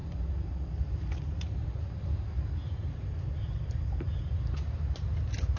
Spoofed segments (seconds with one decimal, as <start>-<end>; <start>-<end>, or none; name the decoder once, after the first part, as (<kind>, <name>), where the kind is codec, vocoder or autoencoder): none

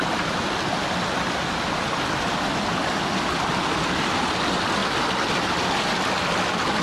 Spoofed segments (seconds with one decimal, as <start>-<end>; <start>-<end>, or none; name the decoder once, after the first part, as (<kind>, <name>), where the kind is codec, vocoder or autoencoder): none

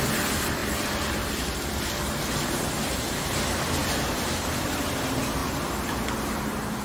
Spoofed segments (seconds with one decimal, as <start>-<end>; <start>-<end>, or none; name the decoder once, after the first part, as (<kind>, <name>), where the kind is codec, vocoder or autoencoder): 0.6-3.4 (vocoder, BigVGAN v2); 3.8-4.5

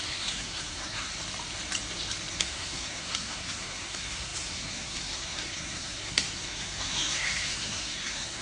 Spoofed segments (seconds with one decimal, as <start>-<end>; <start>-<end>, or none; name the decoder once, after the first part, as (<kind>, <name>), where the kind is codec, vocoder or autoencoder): 0.0-1.1 (codec, SNAC); 2.3-8.4

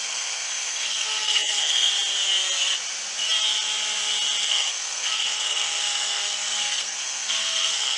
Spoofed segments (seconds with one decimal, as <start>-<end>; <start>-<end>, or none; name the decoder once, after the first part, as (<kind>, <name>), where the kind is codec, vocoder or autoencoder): 0.0-1.9 (codec, SNAC); 4.4-8.0